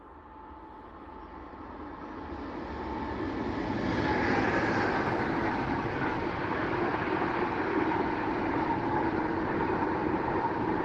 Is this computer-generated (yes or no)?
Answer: no